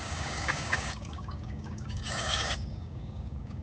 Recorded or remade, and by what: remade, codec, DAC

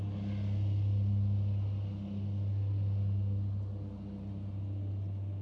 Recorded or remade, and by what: recorded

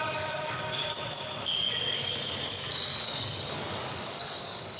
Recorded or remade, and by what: remade, codec, DAC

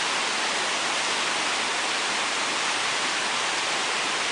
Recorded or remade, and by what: recorded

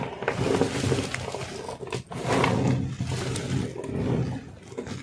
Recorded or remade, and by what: recorded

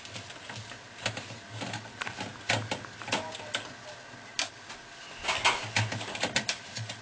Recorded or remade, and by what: recorded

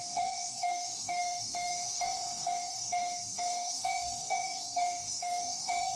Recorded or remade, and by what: remade, codec, DAC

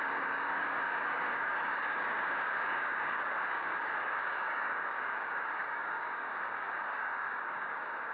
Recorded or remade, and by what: remade, codec, DAC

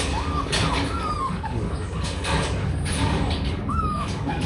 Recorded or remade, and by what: remade, codec, DAC